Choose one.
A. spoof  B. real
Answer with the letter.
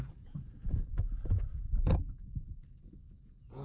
A